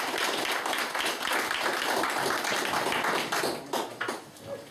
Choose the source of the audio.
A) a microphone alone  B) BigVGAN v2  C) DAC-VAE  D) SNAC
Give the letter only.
A